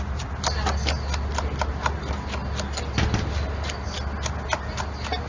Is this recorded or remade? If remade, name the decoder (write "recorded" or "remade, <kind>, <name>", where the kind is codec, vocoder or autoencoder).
recorded